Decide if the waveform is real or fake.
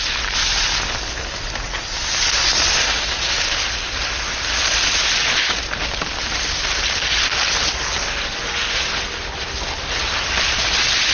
real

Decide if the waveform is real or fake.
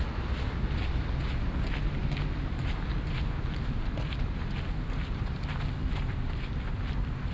real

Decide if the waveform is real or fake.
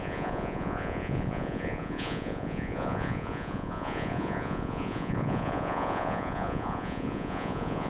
fake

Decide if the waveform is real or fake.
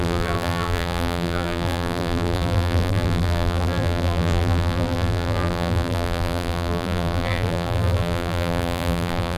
fake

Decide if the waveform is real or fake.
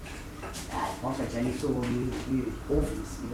fake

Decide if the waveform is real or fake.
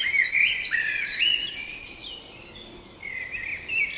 real